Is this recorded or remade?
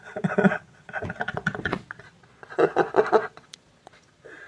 remade